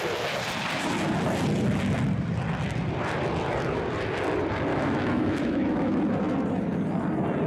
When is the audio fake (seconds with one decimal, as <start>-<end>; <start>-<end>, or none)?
4.7-6.0